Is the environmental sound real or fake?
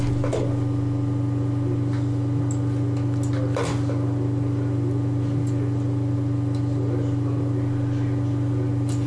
real